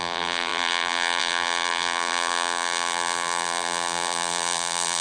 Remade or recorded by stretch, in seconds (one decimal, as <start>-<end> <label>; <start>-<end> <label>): 0.0-5.0 remade